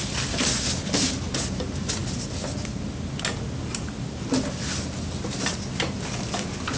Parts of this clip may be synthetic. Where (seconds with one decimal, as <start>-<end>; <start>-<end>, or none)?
none